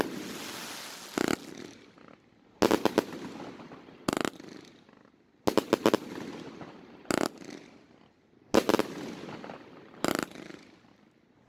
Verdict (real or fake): real